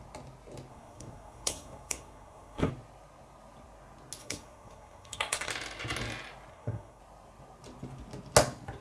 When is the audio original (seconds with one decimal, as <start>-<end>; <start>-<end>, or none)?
0.0-0.7; 2.7-4.2; 5.5-6.5; 7.0-8.8